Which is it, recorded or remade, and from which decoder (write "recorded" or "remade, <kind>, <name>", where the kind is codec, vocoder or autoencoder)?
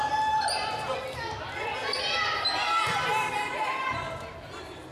recorded